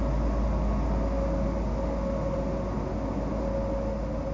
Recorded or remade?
recorded